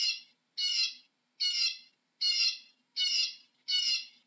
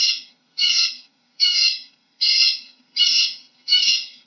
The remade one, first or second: second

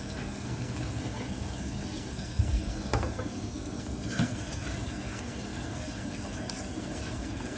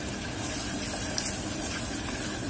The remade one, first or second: first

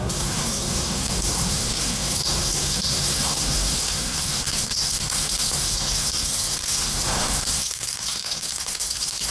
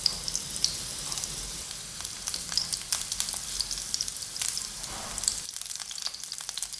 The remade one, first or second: first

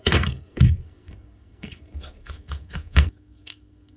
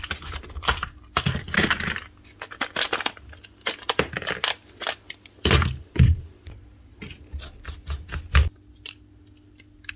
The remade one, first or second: first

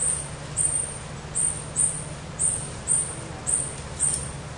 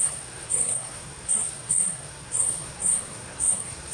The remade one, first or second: second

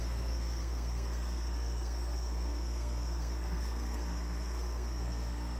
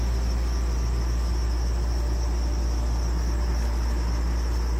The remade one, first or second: first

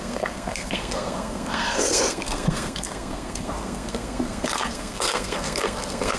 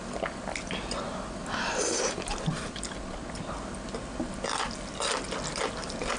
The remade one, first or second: first